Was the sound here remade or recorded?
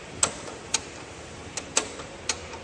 recorded